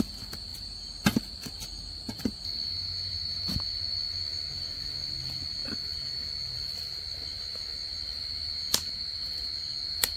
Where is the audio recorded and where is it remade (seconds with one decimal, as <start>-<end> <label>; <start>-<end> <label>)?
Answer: 0.0-10.2 recorded